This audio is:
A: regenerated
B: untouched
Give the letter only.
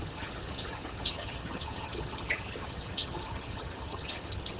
A